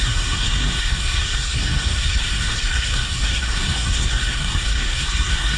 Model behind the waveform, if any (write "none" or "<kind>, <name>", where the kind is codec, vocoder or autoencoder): codec, SNAC